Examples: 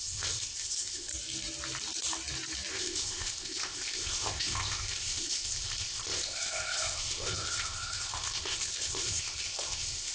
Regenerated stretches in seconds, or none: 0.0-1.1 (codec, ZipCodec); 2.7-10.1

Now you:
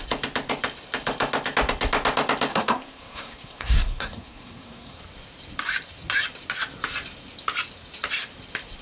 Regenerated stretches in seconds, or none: 2.5-5.0 (codec, SNAC)

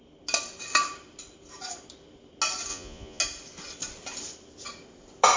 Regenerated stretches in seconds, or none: 2.7-3.2 (vocoder, Vocos)

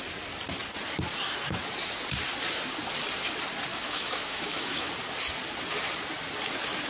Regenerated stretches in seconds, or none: 3.7-4.9 (autoencoder, DAC-VAE)

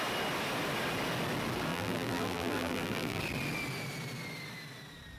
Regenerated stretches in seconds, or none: 1.7-3.2 (vocoder, BigVGAN v2)

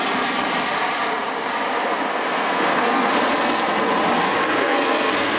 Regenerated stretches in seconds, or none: 2.1-3.1 (codec, SNAC); 4.6-5.4